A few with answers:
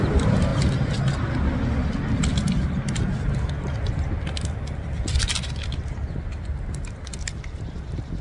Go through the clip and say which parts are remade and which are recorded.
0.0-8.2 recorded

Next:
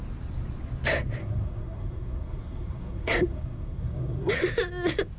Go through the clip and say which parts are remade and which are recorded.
0.0-1.2 recorded; 1.2-4.3 remade; 4.3-5.2 recorded